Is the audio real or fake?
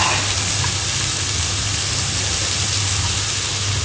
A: real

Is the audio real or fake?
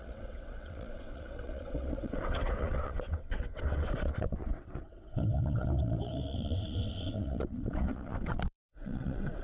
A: fake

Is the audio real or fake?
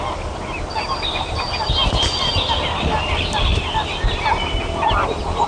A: real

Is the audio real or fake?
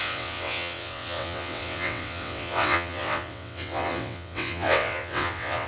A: fake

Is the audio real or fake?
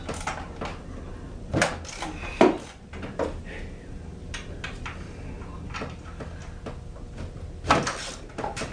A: real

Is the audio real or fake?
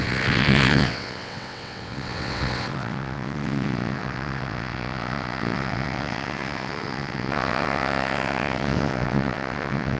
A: fake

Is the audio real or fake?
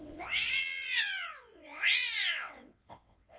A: fake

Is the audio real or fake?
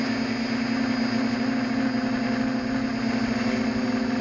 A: real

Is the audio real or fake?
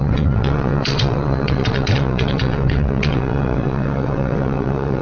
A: fake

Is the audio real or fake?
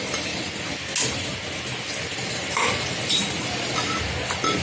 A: real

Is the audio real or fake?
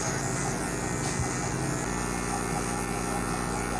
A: real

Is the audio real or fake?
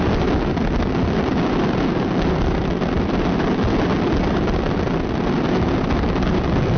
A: real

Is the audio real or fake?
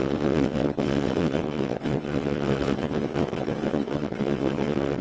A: fake